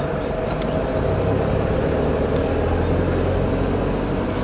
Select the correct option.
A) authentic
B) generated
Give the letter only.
A